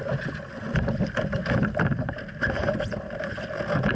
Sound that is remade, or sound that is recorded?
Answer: recorded